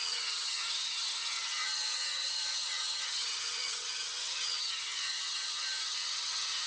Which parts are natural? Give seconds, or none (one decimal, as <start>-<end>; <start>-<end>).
none